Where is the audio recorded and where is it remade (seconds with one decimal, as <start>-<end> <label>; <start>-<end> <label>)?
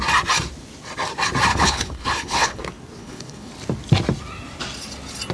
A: 0.0-1.5 recorded; 1.5-2.6 remade; 2.6-3.0 recorded; 3.0-3.5 remade; 3.5-5.3 recorded